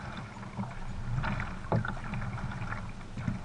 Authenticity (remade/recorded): recorded